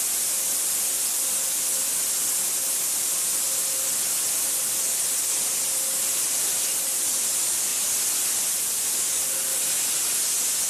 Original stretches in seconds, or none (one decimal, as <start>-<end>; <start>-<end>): 0.0-10.7